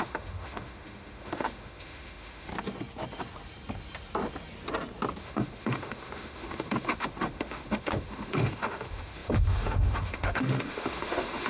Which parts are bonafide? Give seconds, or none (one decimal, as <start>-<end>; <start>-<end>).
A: 2.5-5.2